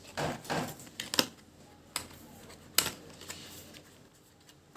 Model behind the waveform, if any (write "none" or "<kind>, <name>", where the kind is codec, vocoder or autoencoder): none